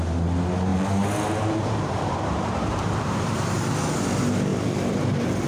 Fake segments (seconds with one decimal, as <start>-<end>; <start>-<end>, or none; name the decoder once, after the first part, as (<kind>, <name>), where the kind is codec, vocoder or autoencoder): 0.7-3.7 (vocoder, BigVGAN v2); 4.5-5.5